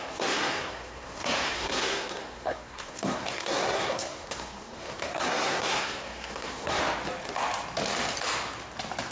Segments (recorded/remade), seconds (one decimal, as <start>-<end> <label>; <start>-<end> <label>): 0.0-6.8 remade; 6.8-9.1 recorded